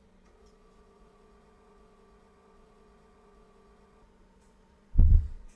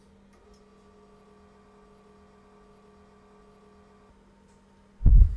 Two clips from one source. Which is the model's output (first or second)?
first